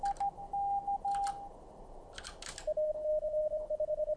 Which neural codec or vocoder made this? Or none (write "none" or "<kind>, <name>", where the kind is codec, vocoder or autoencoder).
none